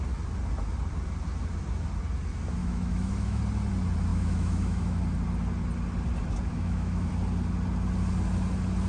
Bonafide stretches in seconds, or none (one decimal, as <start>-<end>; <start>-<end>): 0.0-2.6; 3.4-4.1; 5.0-6.5; 7.1-8.9